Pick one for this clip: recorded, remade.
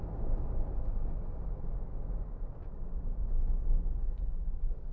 recorded